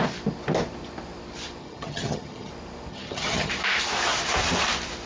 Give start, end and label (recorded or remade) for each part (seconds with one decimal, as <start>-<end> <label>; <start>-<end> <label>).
0.0-1.6 recorded; 1.6-2.5 remade; 2.5-2.9 recorded; 2.9-3.5 remade; 3.5-5.1 recorded